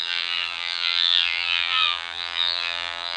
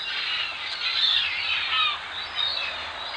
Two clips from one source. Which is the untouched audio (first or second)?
second